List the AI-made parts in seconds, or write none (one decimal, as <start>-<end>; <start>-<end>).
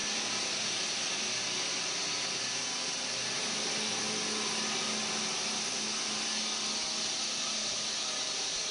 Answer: none